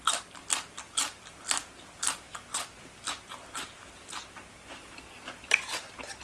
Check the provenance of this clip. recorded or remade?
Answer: remade